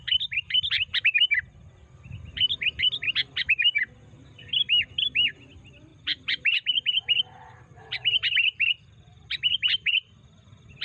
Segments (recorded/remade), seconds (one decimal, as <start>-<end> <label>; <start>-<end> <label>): 0.0-5.9 recorded; 5.9-10.1 remade; 10.1-10.8 recorded